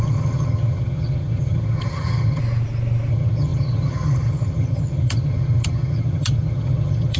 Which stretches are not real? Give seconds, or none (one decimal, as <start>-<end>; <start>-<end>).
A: 0.0-2.4; 3.1-7.2